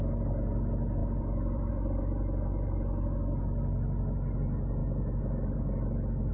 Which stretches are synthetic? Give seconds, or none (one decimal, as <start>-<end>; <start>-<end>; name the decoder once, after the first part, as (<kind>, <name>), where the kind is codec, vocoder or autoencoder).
1.0-1.7 (vocoder, BigVGAN v2); 4.8-6.3